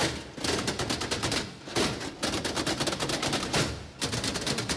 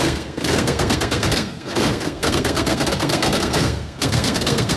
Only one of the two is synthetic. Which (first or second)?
second